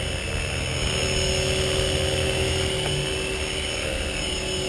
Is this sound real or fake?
real